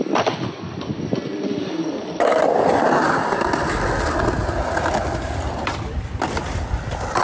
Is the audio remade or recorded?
remade